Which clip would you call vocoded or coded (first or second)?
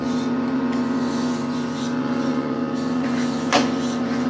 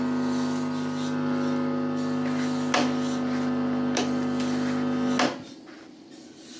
first